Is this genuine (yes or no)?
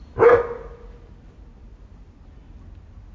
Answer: yes